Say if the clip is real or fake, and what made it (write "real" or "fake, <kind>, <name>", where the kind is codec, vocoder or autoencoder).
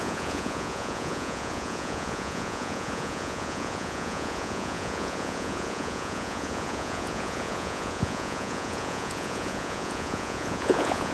fake, vocoder, Vocos